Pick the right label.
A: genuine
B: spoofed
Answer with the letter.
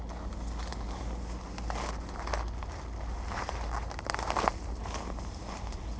A